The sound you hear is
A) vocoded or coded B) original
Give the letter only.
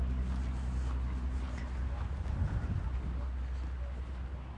B